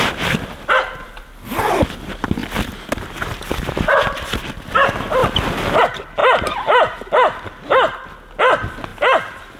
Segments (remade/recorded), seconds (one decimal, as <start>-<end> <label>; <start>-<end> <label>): 0.0-9.6 recorded